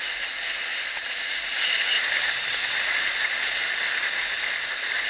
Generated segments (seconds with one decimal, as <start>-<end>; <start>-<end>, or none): 0.7-3.8